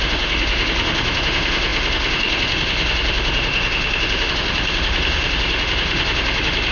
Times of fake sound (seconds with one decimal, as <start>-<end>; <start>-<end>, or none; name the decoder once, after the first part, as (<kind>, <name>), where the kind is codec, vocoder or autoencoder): 0.0-6.7 (autoencoder, DAC-VAE)